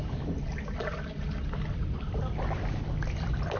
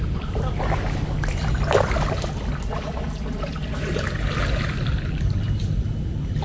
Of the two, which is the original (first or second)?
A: second